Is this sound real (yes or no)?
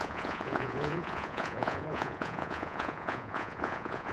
no